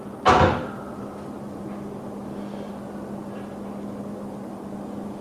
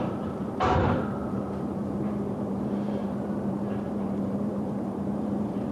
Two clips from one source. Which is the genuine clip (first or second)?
first